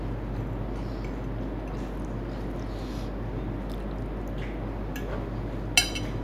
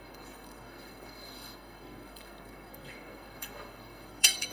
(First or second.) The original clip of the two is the first